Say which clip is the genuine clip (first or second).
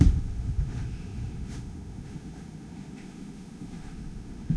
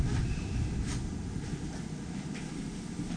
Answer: second